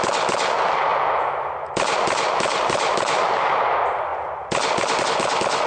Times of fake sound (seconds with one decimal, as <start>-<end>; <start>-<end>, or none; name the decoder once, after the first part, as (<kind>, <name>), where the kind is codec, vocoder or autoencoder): none